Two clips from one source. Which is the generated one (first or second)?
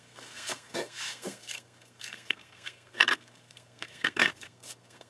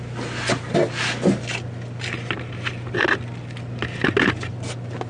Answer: first